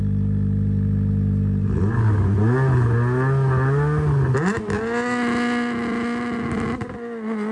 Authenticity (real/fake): real